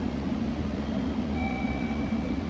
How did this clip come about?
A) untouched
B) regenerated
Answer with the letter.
B